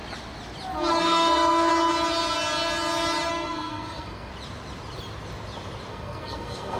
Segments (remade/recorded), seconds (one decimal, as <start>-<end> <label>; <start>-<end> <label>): 0.0-0.9 recorded; 0.9-1.7 remade; 1.7-3.3 recorded; 3.3-4.3 remade; 4.3-5.9 recorded; 5.9-6.8 remade

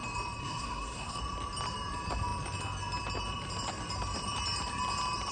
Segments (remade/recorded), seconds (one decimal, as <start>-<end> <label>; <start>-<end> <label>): 0.0-0.4 recorded; 0.4-1.2 remade; 1.2-5.3 recorded

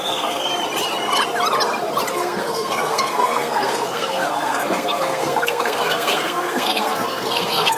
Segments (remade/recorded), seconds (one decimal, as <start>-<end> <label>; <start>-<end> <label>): 0.0-0.5 remade; 0.5-2.1 recorded; 2.1-7.8 remade

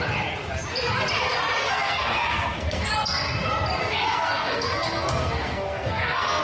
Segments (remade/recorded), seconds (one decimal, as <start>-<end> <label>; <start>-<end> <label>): 0.0-1.6 recorded; 1.6-2.9 remade; 2.9-3.8 recorded; 3.8-6.4 remade

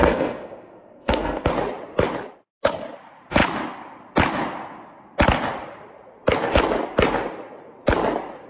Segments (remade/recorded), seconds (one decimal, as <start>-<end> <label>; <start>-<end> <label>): 0.0-1.5 remade; 1.5-8.5 recorded